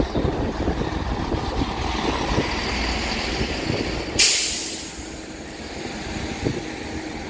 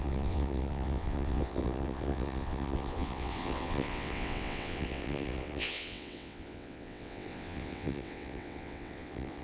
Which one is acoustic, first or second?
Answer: first